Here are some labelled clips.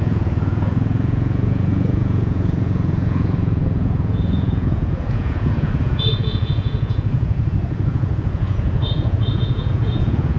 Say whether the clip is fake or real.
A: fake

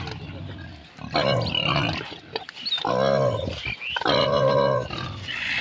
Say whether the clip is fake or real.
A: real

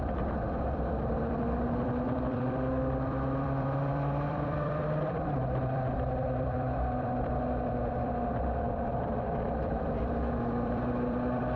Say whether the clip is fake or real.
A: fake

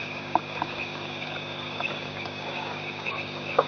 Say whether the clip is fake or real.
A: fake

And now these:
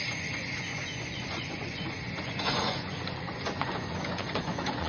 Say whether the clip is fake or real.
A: fake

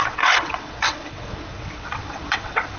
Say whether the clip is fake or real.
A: fake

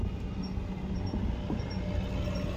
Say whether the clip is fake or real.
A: real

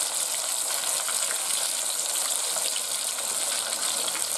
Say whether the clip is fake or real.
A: fake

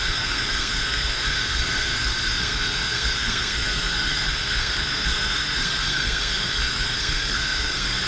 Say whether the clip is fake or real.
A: fake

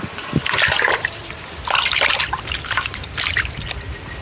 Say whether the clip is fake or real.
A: fake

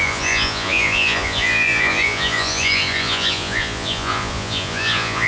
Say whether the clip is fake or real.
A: fake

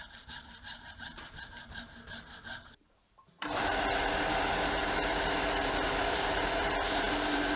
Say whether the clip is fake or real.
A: fake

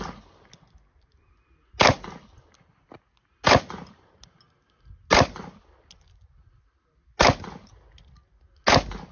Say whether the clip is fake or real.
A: real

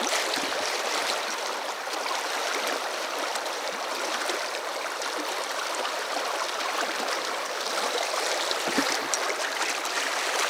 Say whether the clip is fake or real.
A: fake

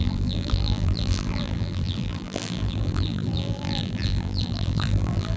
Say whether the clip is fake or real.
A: fake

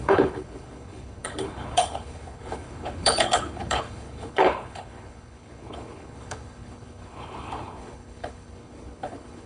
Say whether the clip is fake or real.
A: fake